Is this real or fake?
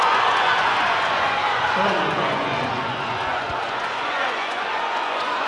fake